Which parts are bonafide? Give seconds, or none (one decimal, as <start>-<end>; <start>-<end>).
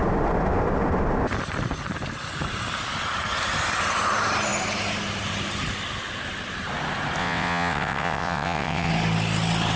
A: 0.0-7.2; 8.9-9.8